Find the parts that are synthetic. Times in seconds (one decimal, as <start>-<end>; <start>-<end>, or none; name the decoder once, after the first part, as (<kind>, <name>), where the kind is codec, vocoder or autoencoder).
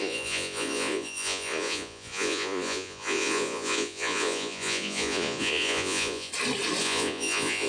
0.0-6.3 (vocoder, Vocos); 6.8-7.7